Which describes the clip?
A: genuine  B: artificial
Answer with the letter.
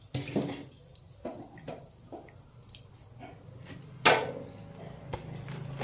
A